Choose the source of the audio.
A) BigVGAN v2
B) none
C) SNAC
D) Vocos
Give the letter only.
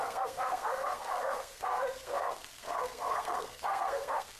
C